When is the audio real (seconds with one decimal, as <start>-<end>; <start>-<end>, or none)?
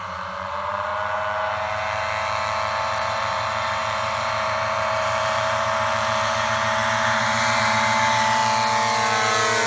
0.9-2.8; 8.4-9.7